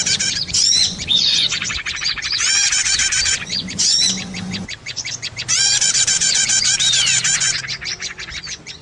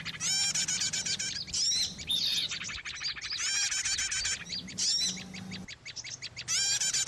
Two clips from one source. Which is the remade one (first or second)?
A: first